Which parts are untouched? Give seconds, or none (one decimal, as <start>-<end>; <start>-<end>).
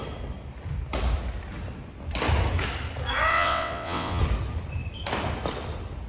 0.0-3.3; 4.2-6.1